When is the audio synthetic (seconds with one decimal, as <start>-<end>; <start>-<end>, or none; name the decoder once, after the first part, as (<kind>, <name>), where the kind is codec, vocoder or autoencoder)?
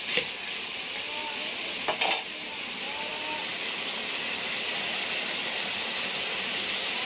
none